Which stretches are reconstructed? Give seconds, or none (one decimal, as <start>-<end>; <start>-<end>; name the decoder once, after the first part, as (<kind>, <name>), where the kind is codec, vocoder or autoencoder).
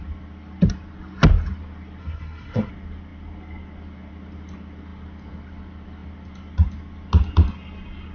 2.0-2.7 (codec, SNAC)